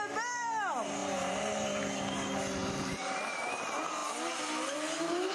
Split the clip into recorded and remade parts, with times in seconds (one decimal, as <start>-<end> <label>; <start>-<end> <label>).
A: 0.0-1.0 recorded; 1.0-1.8 remade; 1.8-2.6 recorded; 2.6-3.2 remade; 3.2-5.3 recorded